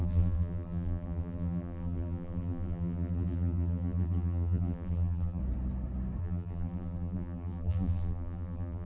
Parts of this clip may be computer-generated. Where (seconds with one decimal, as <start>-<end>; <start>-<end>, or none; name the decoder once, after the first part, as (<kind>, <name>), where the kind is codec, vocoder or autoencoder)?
0.0-5.4 (vocoder, BigVGAN v2); 6.2-8.9